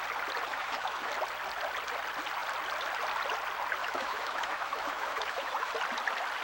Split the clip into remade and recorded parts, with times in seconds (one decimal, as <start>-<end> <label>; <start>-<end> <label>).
0.0-0.5 recorded; 0.5-1.1 remade; 1.1-3.8 recorded; 3.8-5.7 remade; 5.7-6.4 recorded